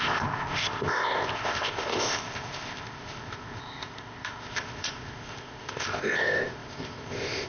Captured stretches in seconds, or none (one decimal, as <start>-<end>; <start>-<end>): none